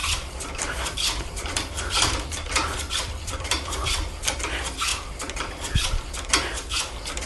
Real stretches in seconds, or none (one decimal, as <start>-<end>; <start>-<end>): 4.4-7.3